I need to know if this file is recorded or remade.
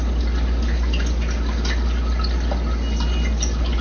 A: recorded